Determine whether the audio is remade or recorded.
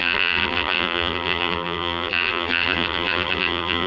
remade